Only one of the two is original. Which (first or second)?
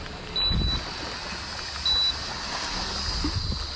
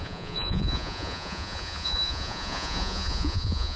first